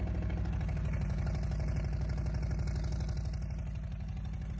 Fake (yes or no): no